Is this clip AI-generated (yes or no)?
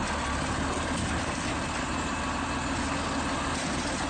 no